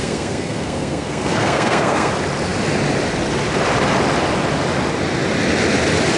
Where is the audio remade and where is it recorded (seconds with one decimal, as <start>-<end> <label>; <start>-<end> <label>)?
0.0-2.1 remade; 2.1-6.2 recorded

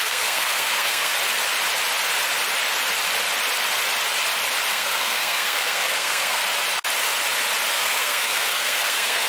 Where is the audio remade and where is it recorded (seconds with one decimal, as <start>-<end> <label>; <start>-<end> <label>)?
0.0-1.1 remade; 1.1-4.7 recorded; 4.7-6.4 remade; 6.4-7.7 recorded; 7.7-9.3 remade

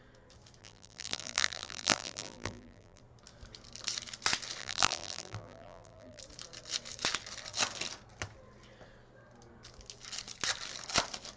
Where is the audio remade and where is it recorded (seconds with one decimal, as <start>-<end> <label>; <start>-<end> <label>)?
0.0-0.6 recorded; 0.6-3.0 remade; 3.0-4.6 recorded; 4.6-6.2 remade; 6.2-11.4 recorded

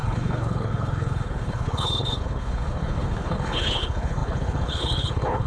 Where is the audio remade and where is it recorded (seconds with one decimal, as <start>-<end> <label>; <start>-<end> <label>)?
0.0-5.5 remade

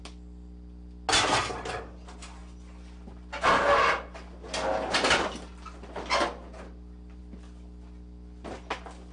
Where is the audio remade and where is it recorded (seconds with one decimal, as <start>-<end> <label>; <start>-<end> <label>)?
0.0-9.1 recorded

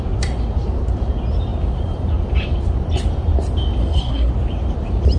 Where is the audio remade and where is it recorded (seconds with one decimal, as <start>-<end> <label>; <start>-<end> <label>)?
0.0-3.8 recorded; 3.8-4.3 remade; 4.3-5.2 recorded

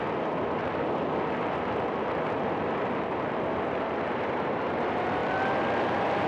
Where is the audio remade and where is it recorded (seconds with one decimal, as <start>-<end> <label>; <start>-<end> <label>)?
0.0-5.2 recorded; 5.2-6.3 remade

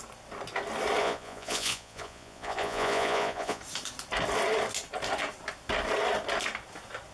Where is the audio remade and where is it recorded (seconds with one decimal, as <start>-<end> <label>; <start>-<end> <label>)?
0.0-1.0 recorded; 1.0-3.6 remade; 3.6-7.1 recorded